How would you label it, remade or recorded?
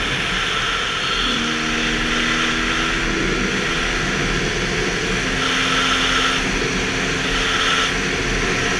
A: recorded